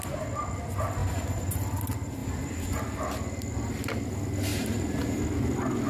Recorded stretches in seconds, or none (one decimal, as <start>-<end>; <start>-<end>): 0.0-1.0; 1.8-2.2; 2.8-4.5; 5.2-5.9